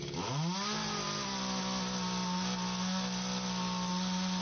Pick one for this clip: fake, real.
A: real